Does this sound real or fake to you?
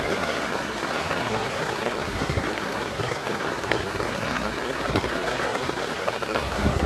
fake